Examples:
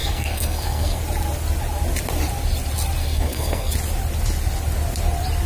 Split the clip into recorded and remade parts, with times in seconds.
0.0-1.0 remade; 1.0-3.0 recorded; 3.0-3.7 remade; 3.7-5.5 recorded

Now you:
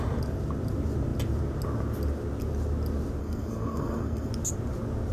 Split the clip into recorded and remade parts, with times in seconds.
0.0-3.2 recorded; 3.2-4.3 remade; 4.3-5.1 recorded

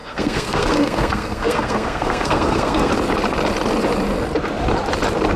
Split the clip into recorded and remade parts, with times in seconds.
0.0-2.9 remade; 2.9-5.4 recorded

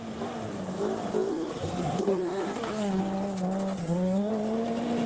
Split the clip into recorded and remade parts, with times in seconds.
0.0-1.3 recorded; 1.3-3.0 remade; 3.0-3.8 recorded; 3.8-4.3 remade; 4.3-5.1 recorded

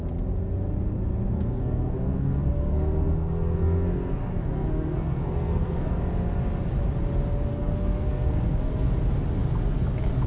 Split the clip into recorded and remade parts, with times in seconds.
0.0-1.3 recorded; 1.3-5.9 remade; 5.9-7.5 recorded; 7.5-8.9 remade; 8.9-10.3 recorded

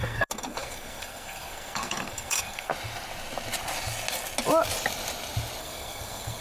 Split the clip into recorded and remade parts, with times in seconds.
0.0-2.7 remade; 2.7-5.6 recorded; 5.6-6.4 remade

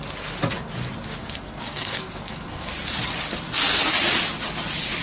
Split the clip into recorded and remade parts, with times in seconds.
0.0-1.2 recorded; 1.2-2.7 remade; 2.7-5.0 recorded

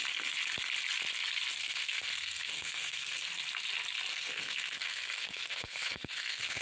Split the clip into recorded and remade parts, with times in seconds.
0.0-1.6 recorded; 1.6-3.3 remade; 3.3-4.1 recorded; 4.1-6.6 remade